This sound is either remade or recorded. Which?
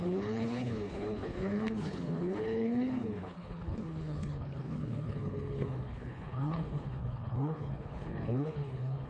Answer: remade